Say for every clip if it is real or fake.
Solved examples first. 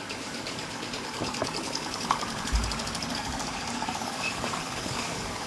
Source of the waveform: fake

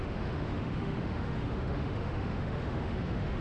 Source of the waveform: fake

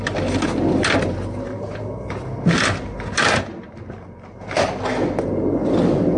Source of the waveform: real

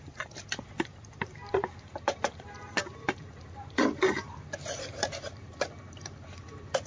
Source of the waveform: fake